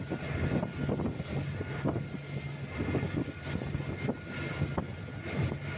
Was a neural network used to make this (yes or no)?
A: no